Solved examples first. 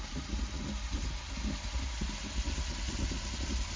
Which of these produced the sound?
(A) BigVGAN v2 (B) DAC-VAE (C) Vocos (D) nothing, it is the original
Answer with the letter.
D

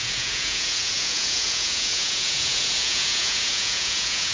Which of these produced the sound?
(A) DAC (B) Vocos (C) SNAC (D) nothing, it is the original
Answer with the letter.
B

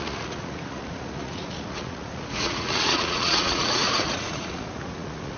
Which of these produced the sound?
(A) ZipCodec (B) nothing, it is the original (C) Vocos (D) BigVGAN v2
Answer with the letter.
C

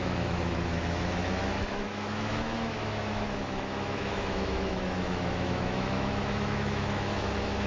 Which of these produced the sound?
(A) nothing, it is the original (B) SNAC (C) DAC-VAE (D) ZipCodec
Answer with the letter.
C